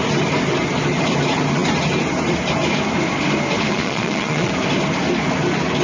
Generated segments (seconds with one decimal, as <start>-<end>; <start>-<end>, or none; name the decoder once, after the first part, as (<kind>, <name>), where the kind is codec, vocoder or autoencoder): 3.7-4.5 (vocoder, Vocos)